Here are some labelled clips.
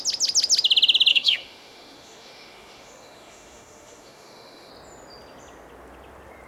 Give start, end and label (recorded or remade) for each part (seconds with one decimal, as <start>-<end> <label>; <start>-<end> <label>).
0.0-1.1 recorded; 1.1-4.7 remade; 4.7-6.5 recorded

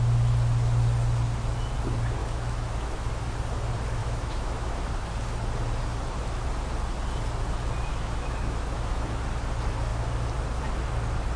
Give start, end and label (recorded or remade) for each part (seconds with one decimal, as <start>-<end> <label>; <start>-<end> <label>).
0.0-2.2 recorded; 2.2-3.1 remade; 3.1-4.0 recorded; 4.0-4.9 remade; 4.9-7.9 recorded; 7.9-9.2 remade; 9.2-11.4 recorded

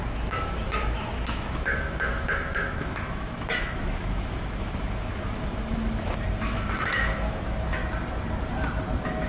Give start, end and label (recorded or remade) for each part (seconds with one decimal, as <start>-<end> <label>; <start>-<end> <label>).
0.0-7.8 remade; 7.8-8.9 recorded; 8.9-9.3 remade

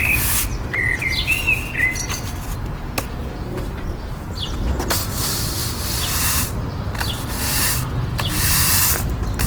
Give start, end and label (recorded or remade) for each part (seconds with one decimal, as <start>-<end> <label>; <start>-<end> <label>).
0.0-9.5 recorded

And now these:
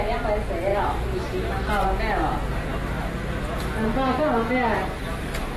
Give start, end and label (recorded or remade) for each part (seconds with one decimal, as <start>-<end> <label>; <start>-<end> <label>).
0.0-0.7 recorded; 0.7-1.7 remade; 1.7-5.6 recorded